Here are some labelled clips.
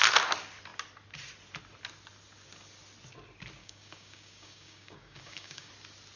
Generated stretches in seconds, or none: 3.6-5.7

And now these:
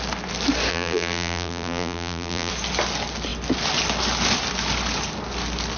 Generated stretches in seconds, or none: 0.7-2.5

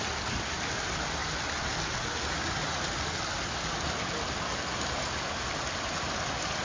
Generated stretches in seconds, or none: none

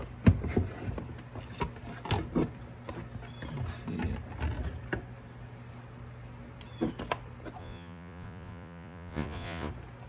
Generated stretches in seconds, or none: 7.6-9.7

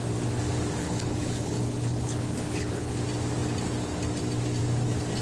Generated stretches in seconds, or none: 0.8-3.0

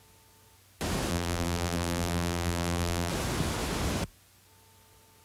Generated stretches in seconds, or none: 1.1-3.1

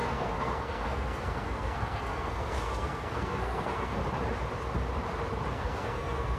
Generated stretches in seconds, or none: 0.0-4.0; 5.5-6.4

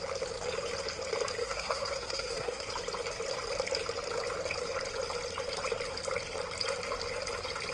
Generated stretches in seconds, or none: 1.4-2.7